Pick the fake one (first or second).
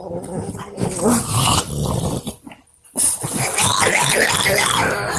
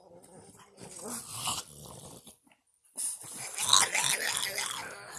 first